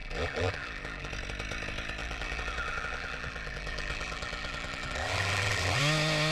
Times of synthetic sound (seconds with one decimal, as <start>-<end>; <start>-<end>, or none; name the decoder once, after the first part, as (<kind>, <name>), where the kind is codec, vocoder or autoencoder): 0.0-1.1 (vocoder, BigVGAN v2); 2.0-5.8